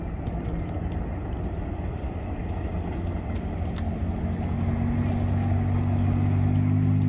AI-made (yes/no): no